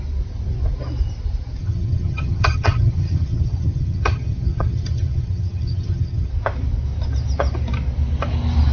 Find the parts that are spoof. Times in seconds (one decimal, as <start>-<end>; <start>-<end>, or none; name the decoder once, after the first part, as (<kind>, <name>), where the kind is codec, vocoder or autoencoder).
1.6-6.3 (vocoder, HiFi-GAN)